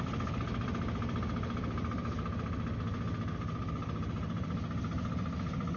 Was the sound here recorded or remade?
recorded